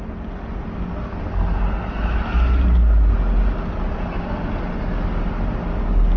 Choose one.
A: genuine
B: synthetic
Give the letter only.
A